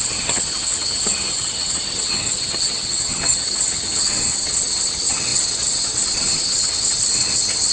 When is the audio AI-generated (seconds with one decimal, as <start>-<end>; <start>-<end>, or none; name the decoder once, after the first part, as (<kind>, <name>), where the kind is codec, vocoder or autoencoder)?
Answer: 0.0-7.7 (vocoder, HiFi-GAN)